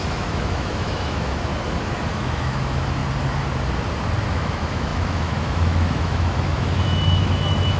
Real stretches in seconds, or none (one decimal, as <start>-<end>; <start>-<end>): 1.5-2.1; 3.0-4.3